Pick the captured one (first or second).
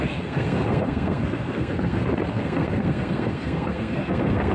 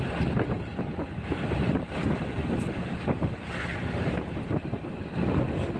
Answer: second